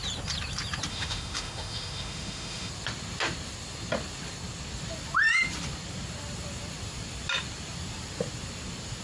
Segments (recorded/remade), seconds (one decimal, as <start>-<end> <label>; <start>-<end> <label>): 0.0-0.9 recorded; 0.9-2.7 remade; 2.7-9.0 recorded